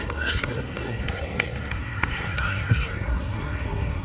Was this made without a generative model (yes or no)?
no